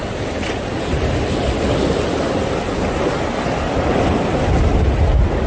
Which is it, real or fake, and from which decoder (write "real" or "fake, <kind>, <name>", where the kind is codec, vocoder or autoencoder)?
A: real